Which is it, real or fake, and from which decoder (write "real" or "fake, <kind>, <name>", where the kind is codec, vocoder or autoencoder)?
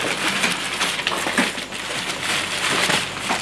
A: real